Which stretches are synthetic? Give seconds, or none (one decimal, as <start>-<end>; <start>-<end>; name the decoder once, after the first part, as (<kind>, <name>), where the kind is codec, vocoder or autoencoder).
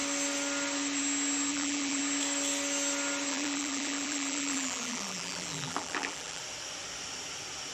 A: 1.5-2.0 (vocoder, BigVGAN v2); 3.3-6.4